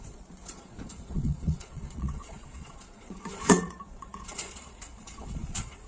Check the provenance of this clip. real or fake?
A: fake